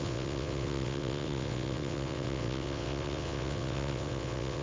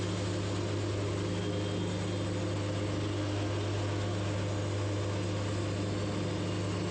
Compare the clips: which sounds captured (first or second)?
second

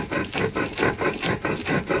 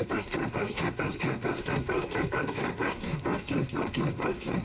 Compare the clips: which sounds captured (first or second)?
first